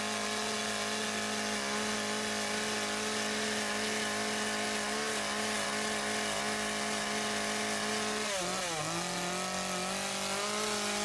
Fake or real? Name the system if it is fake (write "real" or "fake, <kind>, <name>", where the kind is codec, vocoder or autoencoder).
real